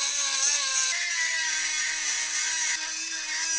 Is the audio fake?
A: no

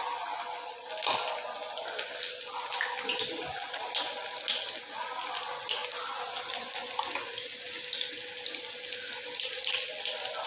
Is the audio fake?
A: no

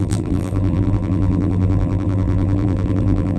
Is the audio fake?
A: yes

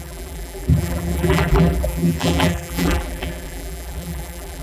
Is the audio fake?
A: yes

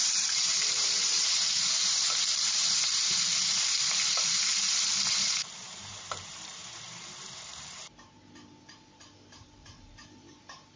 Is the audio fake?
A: yes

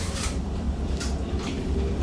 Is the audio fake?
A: yes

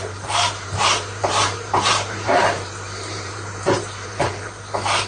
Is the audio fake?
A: yes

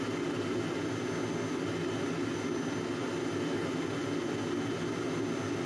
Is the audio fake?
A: no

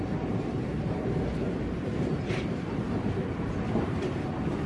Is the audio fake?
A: yes